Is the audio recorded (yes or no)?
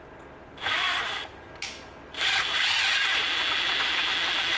yes